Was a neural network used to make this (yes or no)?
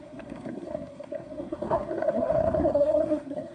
yes